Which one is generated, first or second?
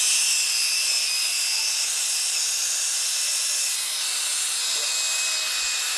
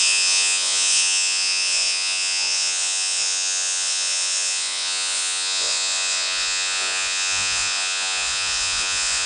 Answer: second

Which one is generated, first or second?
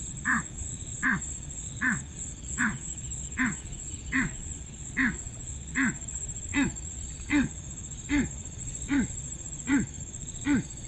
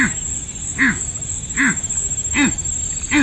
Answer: first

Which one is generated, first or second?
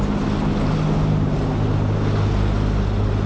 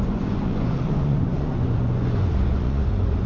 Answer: second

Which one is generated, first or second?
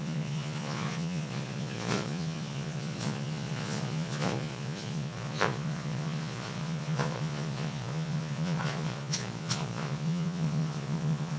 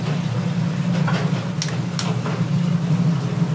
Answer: first